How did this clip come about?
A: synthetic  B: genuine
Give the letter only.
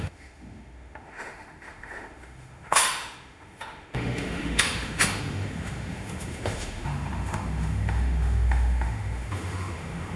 A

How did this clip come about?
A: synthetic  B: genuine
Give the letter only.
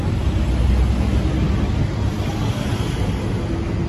B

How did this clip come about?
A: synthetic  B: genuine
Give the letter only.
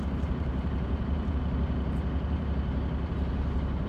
A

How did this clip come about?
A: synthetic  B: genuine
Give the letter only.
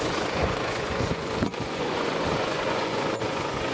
A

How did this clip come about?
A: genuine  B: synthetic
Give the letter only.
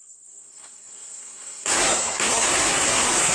B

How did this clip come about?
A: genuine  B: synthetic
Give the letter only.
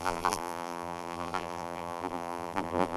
B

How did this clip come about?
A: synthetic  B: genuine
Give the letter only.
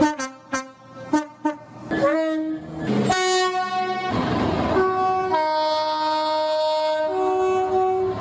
B